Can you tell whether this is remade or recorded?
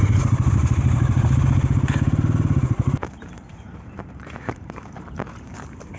remade